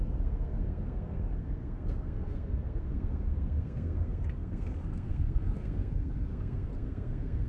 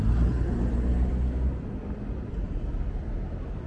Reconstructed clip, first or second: first